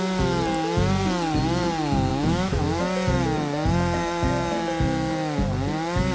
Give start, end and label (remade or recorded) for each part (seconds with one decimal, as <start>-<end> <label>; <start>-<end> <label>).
0.0-2.1 recorded; 2.1-2.8 remade; 2.8-6.1 recorded